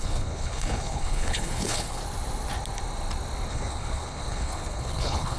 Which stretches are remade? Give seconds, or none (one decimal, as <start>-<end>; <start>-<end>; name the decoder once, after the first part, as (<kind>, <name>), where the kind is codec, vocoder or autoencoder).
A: 0.0-2.0 (codec, HILCodec); 3.5-5.4